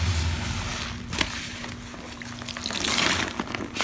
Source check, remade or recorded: recorded